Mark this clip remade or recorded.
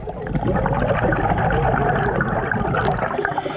recorded